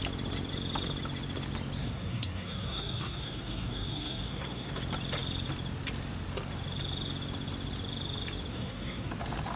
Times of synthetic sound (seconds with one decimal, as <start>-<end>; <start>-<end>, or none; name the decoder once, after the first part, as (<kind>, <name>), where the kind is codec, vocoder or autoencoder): 1.8-4.7 (codec, SNAC); 8.5-9.1